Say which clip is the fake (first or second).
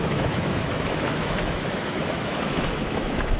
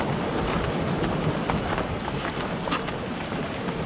first